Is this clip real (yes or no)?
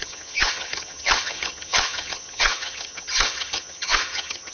no